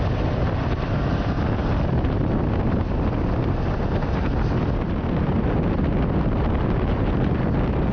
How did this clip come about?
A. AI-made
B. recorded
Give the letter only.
B